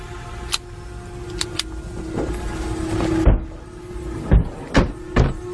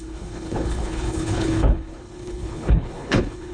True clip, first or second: first